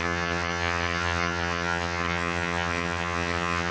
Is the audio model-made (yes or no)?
yes